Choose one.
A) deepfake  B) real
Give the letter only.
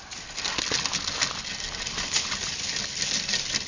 B